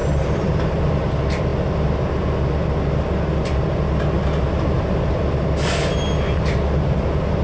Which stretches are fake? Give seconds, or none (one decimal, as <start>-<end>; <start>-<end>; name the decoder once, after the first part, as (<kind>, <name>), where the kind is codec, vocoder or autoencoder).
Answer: 0.0-1.1 (vocoder, BigVGAN v2)